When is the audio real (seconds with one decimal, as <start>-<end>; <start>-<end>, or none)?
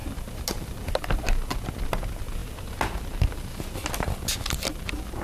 0.0-5.2